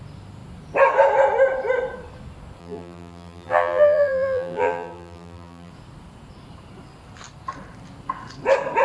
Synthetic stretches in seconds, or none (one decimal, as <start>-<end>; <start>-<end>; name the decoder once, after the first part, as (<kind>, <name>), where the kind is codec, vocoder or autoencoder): 2.6-5.7 (vocoder, BigVGAN v2)